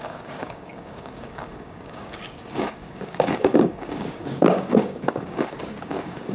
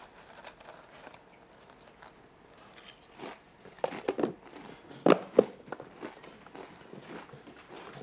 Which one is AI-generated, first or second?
first